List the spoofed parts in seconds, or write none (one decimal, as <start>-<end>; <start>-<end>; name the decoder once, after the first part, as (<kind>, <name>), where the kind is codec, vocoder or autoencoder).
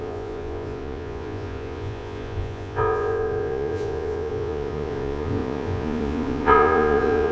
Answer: 0.0-7.3 (vocoder, Vocos)